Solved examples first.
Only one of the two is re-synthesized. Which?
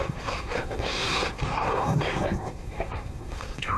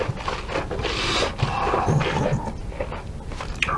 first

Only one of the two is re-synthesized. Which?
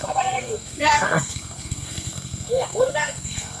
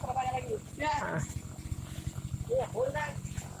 first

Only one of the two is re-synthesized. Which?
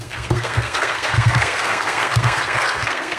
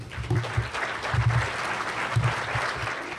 first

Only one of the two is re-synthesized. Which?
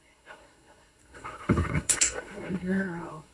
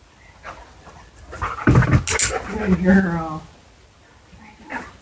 first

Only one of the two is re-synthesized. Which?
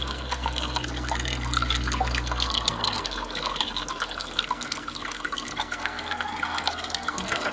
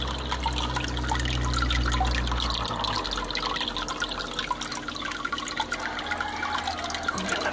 first